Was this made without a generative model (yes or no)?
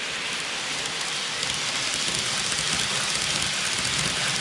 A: yes